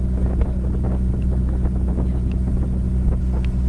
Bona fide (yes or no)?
yes